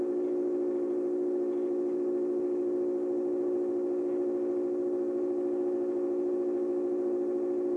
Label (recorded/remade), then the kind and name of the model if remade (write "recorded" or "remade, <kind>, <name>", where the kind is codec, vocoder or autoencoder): recorded